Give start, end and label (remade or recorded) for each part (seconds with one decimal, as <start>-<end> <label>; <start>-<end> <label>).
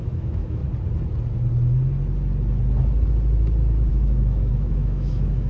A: 0.0-0.6 remade; 0.6-3.9 recorded; 3.9-5.5 remade